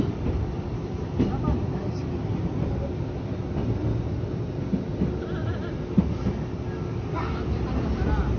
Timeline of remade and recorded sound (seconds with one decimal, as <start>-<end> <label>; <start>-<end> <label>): 0.0-8.4 recorded